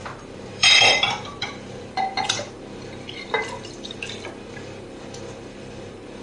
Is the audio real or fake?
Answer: fake